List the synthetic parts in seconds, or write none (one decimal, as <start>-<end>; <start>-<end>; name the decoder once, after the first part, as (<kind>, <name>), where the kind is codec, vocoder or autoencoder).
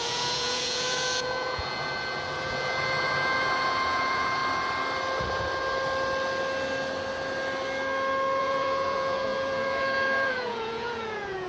0.0-4.4 (vocoder, Vocos); 8.4-11.5